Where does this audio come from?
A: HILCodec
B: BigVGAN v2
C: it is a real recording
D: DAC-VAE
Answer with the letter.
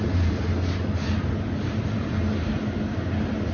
C